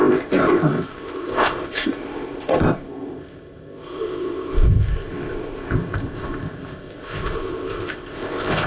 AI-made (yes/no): yes